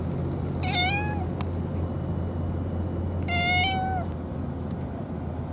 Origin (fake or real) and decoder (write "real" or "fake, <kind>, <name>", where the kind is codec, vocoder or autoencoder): real